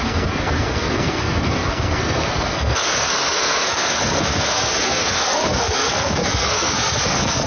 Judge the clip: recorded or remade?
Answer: remade